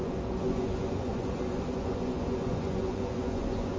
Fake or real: fake